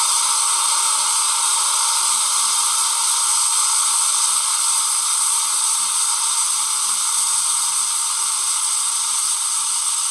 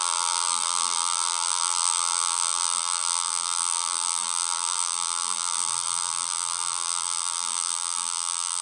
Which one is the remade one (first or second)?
second